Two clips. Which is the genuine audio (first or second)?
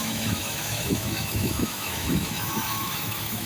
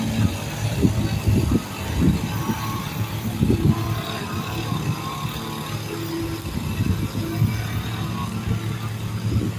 second